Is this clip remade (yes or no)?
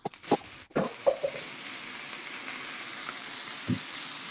no